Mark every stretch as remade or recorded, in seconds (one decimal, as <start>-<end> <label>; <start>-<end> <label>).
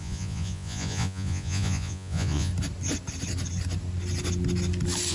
0.0-2.5 remade; 2.5-5.1 recorded